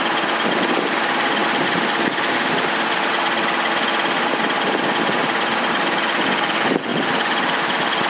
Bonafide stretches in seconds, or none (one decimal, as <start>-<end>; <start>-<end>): 0.0-8.1